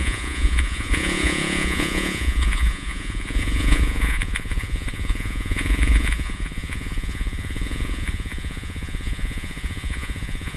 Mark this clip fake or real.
fake